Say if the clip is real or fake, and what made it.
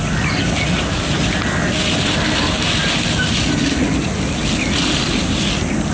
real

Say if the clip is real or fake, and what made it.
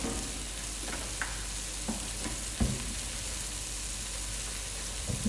real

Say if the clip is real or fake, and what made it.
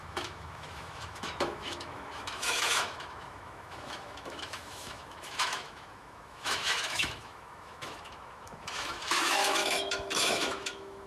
fake, autoencoder, DAC-VAE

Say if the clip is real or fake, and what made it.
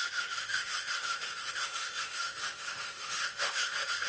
fake, autoencoder, DAC-VAE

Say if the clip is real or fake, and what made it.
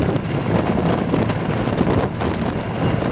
real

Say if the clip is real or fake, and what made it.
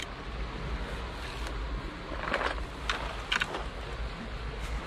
real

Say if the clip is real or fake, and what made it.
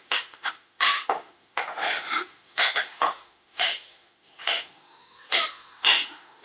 fake, autoencoder, DAC-VAE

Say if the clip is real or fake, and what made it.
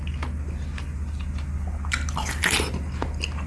real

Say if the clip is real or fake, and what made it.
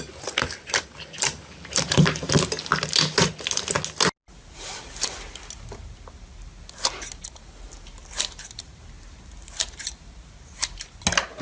real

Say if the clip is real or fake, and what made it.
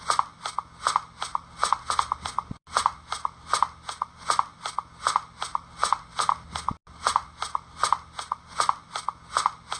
real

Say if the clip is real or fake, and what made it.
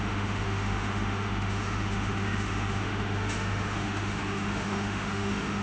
fake, autoencoder, DAC-VAE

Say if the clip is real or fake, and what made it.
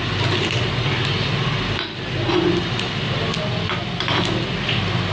real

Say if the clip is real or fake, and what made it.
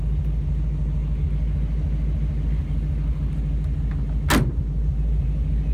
real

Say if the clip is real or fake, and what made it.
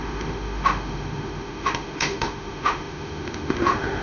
fake, autoencoder, DAC-VAE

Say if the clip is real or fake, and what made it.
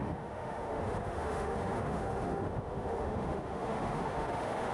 fake, autoencoder, DAC-VAE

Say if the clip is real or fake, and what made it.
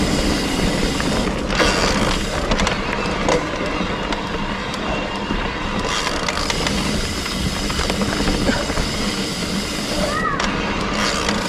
real